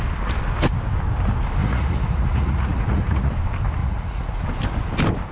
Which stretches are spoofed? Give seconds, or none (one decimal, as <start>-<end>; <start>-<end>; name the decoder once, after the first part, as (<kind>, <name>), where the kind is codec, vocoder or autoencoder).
1.6-3.3 (vocoder, Vocos); 3.8-4.4